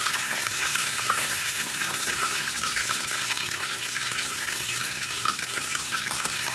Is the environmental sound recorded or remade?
remade